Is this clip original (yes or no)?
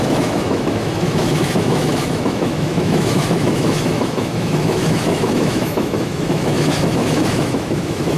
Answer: no